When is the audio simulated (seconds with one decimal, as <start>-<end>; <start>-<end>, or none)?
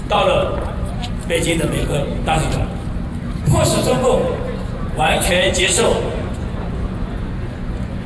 0.0-1.0; 3.4-8.1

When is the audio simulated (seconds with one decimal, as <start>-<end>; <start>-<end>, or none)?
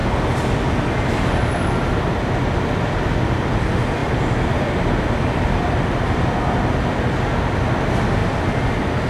0.0-1.3; 4.0-6.3; 8.2-9.1